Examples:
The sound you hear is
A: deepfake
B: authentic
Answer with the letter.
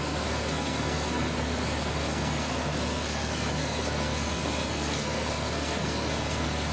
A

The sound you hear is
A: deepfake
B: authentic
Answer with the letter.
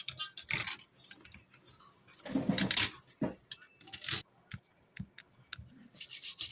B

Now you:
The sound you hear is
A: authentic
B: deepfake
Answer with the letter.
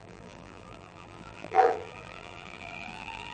B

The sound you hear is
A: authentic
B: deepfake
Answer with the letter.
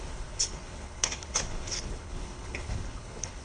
B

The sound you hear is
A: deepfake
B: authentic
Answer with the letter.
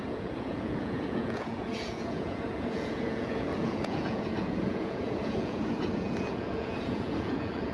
A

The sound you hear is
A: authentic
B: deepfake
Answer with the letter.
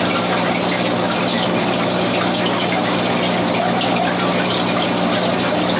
A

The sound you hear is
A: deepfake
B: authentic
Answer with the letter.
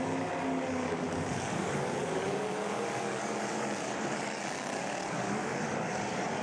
A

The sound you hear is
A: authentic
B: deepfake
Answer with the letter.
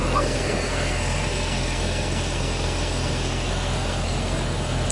B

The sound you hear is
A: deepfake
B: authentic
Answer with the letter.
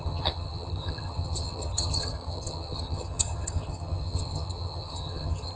A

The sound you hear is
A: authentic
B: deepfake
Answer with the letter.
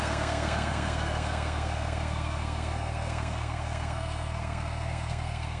B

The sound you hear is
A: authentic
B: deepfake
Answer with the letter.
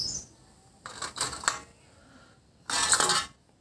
A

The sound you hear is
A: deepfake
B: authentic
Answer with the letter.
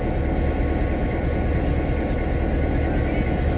B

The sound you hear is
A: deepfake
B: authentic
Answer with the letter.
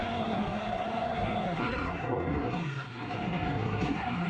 A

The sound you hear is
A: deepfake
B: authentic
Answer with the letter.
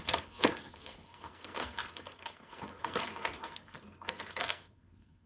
A